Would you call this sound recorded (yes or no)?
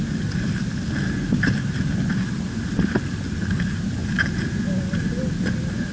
yes